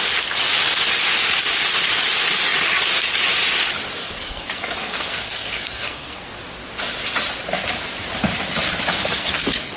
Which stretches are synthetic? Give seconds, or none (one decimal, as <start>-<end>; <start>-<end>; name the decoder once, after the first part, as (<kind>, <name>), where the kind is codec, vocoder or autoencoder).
4.0-6.3 (codec, SNAC); 8.9-9.8